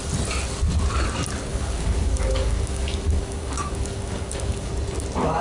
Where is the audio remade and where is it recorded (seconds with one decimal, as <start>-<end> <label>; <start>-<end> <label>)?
0.0-1.5 recorded; 1.5-4.7 remade; 4.7-5.4 recorded